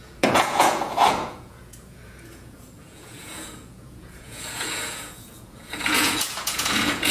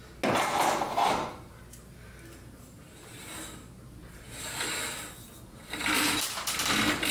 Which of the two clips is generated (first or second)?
first